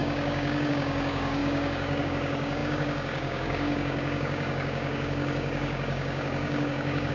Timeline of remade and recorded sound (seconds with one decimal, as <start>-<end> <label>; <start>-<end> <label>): 0.0-7.1 remade